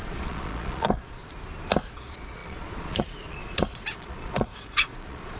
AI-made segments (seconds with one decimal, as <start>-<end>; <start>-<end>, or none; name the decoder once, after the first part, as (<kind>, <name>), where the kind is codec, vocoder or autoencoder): 0.0-1.2 (vocoder, Vocos); 1.9-5.4